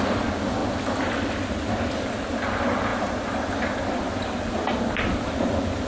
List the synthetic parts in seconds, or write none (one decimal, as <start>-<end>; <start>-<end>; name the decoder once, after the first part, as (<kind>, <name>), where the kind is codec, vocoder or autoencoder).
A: 2.9-3.5 (vocoder, BigVGAN v2)

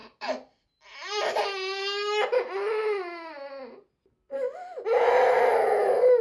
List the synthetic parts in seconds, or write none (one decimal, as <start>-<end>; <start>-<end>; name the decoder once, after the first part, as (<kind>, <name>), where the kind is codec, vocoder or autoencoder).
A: 0.0-1.4 (vocoder, BigVGAN v2)

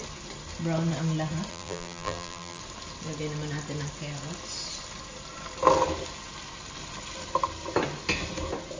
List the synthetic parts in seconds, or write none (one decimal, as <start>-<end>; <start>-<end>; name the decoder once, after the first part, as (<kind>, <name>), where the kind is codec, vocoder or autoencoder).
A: 1.5-2.6 (vocoder, BigVGAN v2)